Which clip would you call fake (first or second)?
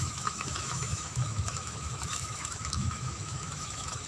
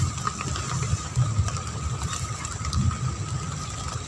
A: first